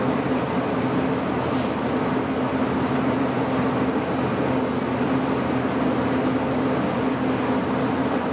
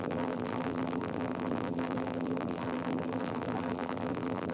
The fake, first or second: second